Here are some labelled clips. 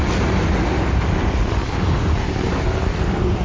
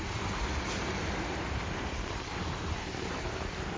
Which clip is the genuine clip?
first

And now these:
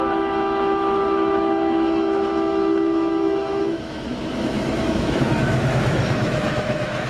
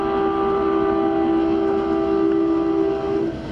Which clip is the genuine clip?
second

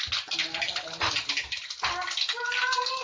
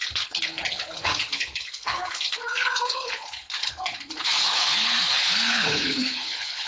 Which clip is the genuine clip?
first